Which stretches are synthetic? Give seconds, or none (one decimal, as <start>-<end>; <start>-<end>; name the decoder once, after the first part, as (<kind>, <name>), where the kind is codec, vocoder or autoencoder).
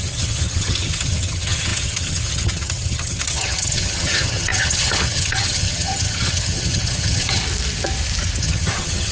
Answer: 0.0-7.4 (vocoder, HiFi-GAN); 8.4-9.1